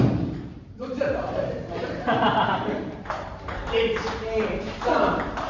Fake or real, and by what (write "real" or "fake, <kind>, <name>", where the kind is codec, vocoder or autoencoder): fake, vocoder, BigVGAN v2